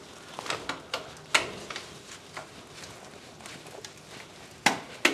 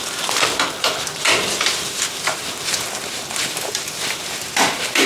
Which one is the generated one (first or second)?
second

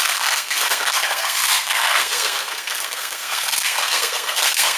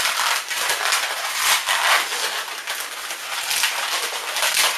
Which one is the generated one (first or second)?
first